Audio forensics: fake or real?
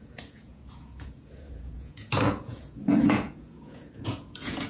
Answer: fake